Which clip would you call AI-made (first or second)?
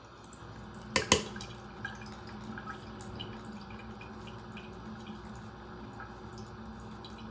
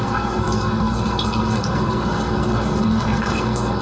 second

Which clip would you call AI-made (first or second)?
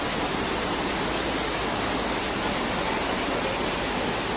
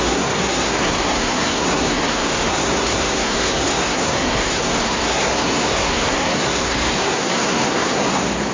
second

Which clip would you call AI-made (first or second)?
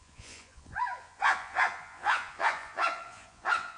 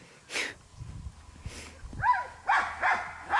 first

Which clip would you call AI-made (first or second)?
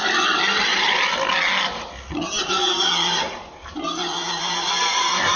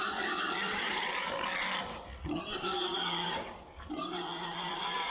second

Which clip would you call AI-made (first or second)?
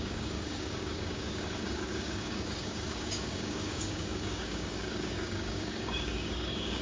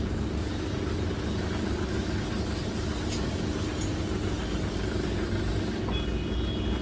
first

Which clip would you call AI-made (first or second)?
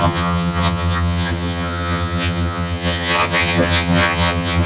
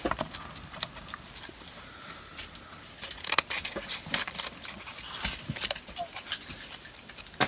first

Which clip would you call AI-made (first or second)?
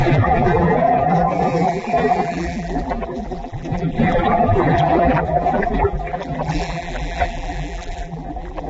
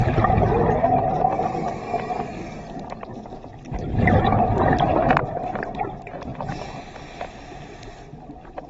first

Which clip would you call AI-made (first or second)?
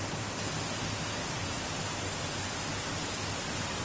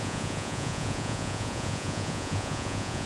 second